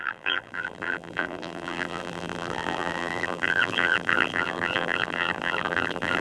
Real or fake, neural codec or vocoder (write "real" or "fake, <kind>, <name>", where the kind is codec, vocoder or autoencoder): fake, vocoder, BigVGAN v2